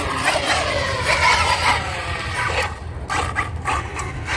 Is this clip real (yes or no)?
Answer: yes